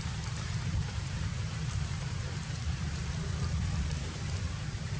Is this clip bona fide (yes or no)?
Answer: no